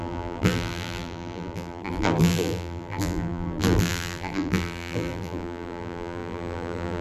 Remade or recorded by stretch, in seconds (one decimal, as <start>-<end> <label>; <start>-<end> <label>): 0.0-7.0 remade